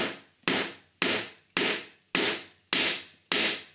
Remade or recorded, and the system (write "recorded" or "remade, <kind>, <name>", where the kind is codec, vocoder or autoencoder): recorded